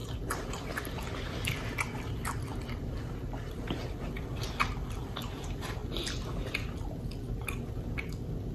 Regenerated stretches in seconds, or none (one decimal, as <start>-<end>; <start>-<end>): none